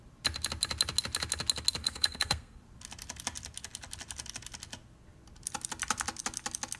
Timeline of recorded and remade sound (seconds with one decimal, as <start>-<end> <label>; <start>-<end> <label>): 0.0-1.8 recorded; 1.8-2.6 remade; 2.6-6.8 recorded